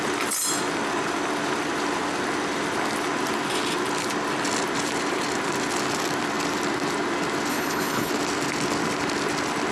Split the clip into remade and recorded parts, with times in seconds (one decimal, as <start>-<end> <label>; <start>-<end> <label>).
0.0-7.5 recorded; 7.5-8.1 remade; 8.1-9.7 recorded

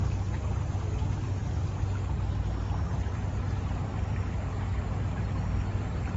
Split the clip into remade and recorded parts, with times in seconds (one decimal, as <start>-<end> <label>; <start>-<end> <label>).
0.0-6.2 recorded

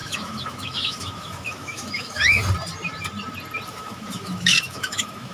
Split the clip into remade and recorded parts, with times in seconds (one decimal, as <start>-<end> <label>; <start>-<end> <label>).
0.0-2.4 remade; 2.4-3.7 recorded; 3.7-5.3 remade

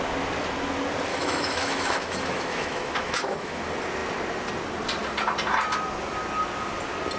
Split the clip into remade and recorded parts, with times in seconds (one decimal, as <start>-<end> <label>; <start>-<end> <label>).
0.0-1.1 recorded; 1.1-3.6 remade; 3.6-7.2 recorded